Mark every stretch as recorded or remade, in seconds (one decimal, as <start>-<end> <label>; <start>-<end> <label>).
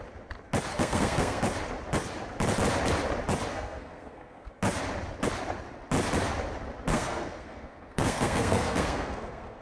0.0-0.7 recorded; 0.7-1.4 remade; 1.4-3.5 recorded; 3.5-4.5 remade; 4.5-6.9 recorded; 6.9-9.6 remade